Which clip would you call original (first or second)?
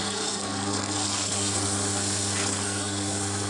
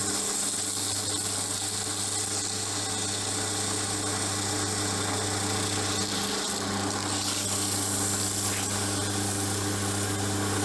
second